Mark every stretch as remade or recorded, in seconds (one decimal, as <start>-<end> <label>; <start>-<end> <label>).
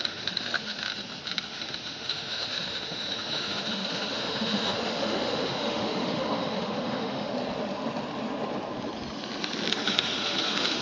0.0-0.9 remade; 0.9-1.5 recorded; 1.5-7.3 remade; 7.3-9.7 recorded; 9.7-10.8 remade